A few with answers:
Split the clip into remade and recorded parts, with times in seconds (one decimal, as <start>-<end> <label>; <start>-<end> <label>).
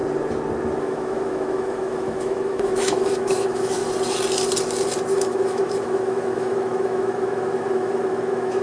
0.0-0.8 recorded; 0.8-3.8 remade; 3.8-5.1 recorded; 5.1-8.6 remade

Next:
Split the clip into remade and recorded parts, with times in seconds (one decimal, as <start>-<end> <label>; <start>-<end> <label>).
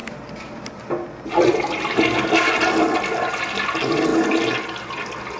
0.0-5.4 recorded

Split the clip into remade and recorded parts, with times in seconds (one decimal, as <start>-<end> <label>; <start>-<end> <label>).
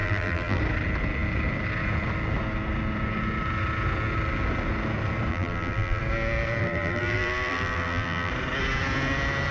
0.0-0.6 remade; 0.6-5.3 recorded; 5.3-6.0 remade; 6.0-6.6 recorded; 6.6-8.3 remade; 8.3-9.5 recorded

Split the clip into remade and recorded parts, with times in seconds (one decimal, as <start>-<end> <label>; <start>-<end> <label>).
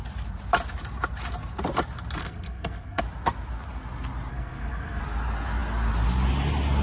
0.0-2.2 recorded; 2.2-3.0 remade; 3.0-4.3 recorded; 4.3-5.0 remade; 5.0-6.8 recorded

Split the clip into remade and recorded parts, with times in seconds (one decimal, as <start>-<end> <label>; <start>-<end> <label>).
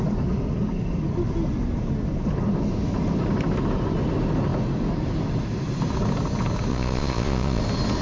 0.0-6.7 recorded; 6.7-7.6 remade; 7.6-8.0 recorded